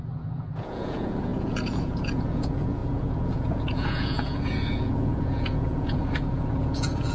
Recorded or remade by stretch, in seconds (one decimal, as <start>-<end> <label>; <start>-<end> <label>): 0.0-7.1 remade